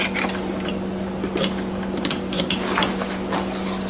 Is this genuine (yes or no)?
yes